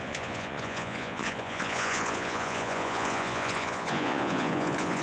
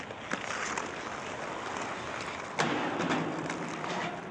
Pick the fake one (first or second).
first